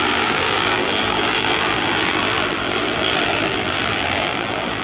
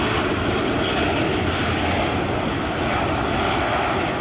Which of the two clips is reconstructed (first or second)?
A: first